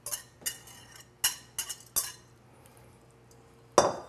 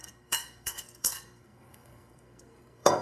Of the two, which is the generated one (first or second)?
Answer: second